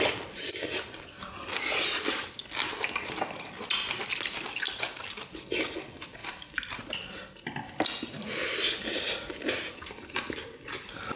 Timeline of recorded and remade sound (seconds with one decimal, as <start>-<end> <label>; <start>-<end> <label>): 0.0-11.2 recorded